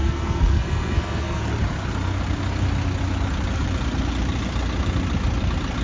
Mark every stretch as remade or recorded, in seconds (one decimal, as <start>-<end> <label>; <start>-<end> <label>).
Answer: 0.0-1.4 remade; 1.4-5.8 recorded

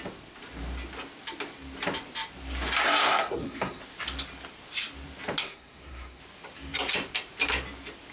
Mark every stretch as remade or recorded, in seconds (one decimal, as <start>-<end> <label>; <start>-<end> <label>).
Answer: 0.0-3.0 recorded; 3.0-3.8 remade; 3.8-5.4 recorded; 5.4-6.2 remade; 6.2-8.1 recorded

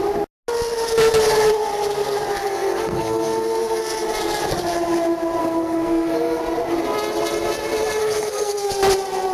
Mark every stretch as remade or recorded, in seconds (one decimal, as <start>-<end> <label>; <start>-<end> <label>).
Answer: 0.0-2.4 recorded; 2.4-3.8 remade; 3.8-5.4 recorded; 5.4-6.4 remade; 6.4-8.0 recorded; 8.0-8.7 remade; 8.7-9.3 recorded

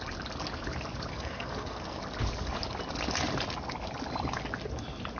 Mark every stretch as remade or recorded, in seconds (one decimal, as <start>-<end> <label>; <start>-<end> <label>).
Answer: 0.0-1.1 recorded; 1.1-2.0 remade; 2.0-5.2 recorded

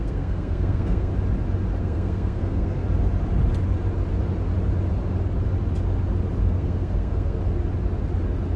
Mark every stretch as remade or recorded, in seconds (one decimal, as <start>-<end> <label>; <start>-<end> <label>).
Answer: 0.0-1.1 remade; 1.1-1.8 recorded; 1.8-2.8 remade; 2.8-6.4 recorded; 6.4-7.4 remade; 7.4-8.6 recorded

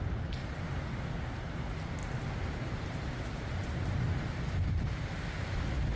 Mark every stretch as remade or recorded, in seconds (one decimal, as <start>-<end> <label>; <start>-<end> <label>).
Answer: 0.0-6.0 recorded